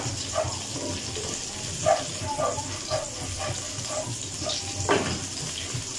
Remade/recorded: recorded